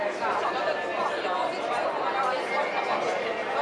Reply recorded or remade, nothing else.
recorded